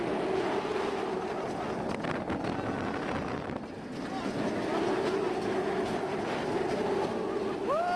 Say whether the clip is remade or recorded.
recorded